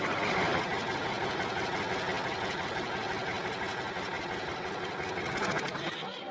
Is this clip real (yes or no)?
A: yes